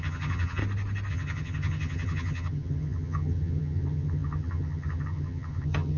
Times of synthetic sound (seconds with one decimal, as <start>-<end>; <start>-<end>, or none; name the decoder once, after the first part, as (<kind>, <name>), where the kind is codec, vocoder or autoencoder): 0.0-0.6 (vocoder, HiFi-GAN); 1.1-6.0